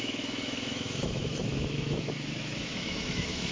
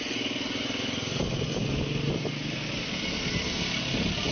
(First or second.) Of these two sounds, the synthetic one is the first